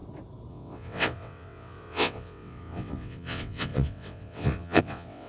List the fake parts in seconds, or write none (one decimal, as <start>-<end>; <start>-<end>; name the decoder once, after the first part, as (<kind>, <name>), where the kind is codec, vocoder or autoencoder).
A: 0.5-5.3 (vocoder, WaveNeXt)